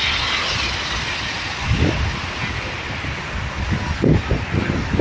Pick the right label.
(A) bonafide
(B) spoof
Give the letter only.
A